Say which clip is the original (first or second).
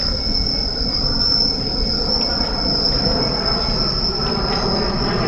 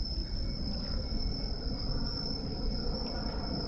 first